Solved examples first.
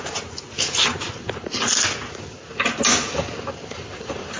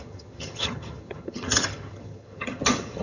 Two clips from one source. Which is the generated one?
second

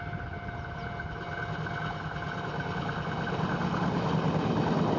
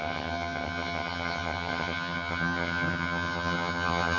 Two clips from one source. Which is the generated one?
second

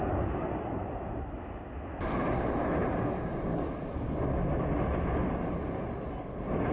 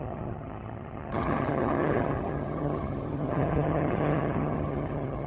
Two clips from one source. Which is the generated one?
second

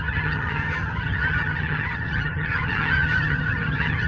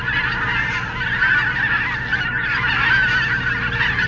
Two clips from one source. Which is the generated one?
first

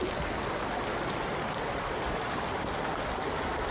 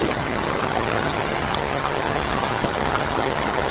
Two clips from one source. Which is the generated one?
second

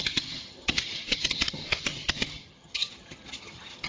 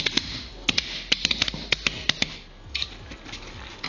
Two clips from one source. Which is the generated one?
first